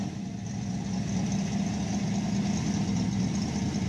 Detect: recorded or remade recorded